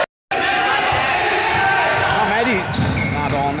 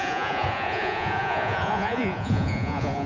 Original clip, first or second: first